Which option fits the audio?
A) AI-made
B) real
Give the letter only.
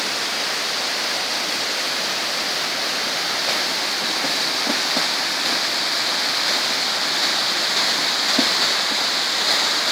B